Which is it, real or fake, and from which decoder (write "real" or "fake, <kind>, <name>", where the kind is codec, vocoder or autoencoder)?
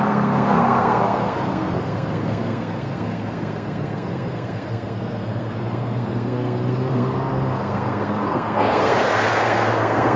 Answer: fake, codec, SNAC